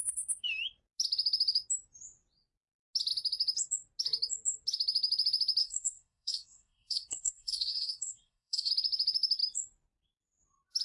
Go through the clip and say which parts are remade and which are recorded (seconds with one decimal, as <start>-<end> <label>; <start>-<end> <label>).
0.0-5.6 recorded; 5.6-8.7 remade; 8.7-10.8 recorded